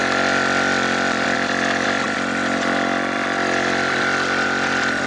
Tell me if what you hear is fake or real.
real